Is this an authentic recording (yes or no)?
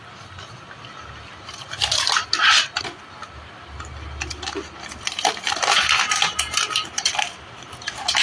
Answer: yes